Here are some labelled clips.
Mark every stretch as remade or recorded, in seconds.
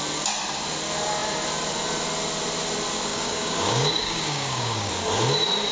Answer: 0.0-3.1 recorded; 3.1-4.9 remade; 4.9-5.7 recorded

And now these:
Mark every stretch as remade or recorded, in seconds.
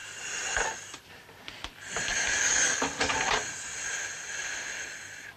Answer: 0.0-2.1 recorded; 2.1-3.1 remade; 3.1-5.4 recorded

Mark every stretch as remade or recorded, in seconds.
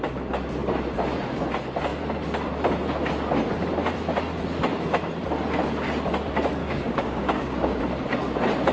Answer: 0.0-6.6 recorded; 6.6-7.8 remade; 7.8-8.7 recorded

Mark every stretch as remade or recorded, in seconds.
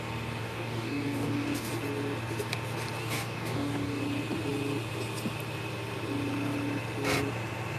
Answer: 0.0-0.4 recorded; 0.4-1.7 remade; 1.7-3.0 recorded; 3.0-4.0 remade; 4.0-7.8 recorded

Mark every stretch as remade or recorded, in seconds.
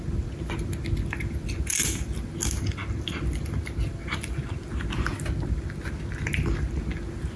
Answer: 0.0-7.4 recorded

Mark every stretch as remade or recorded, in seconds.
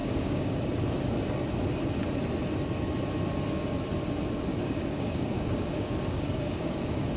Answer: 0.0-0.7 remade; 0.7-4.5 recorded; 4.5-7.2 remade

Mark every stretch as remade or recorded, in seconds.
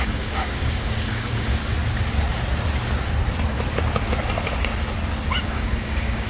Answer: 0.0-1.6 remade; 1.6-5.4 recorded; 5.4-6.3 remade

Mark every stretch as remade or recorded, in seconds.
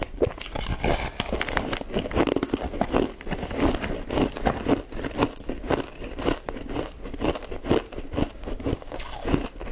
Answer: 0.0-8.3 recorded; 8.3-9.0 remade; 9.0-9.7 recorded